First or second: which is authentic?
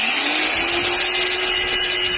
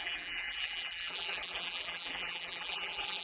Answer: first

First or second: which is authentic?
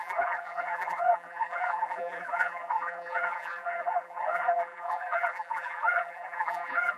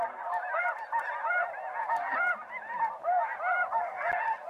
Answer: second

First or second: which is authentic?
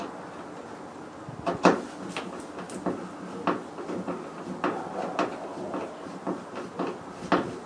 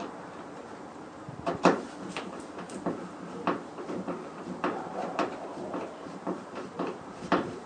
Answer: first